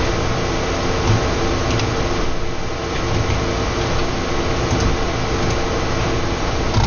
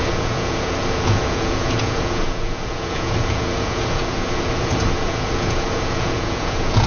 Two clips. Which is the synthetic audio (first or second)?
second